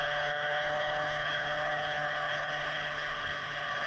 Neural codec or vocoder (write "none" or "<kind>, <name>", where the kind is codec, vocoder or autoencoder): codec, HILCodec